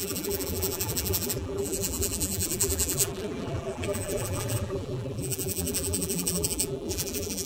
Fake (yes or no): yes